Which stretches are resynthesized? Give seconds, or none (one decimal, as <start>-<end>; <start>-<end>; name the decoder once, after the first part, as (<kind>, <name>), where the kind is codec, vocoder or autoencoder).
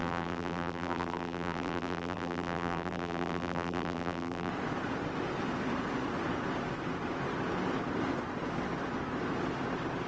0.0-4.5 (vocoder, BigVGAN v2)